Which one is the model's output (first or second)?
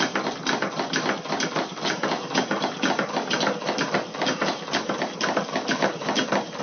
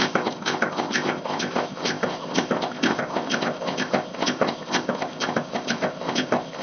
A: second